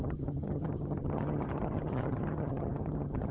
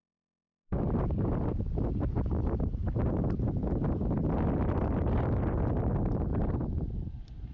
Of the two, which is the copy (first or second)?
first